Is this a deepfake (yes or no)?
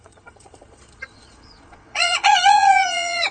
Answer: yes